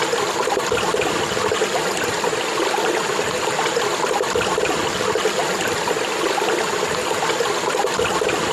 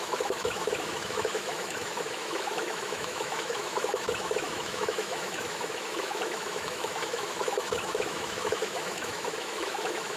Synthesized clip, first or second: second